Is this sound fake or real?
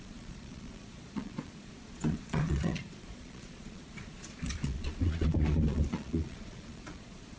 fake